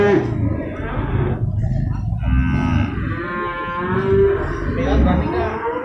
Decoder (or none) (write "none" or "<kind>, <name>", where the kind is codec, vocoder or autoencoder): none